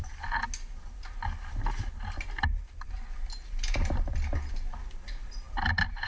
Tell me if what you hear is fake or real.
real